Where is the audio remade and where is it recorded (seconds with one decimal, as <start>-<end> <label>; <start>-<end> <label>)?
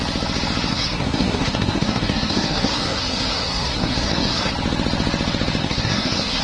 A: 0.0-0.7 recorded; 0.7-4.5 remade; 4.5-5.6 recorded; 5.6-6.4 remade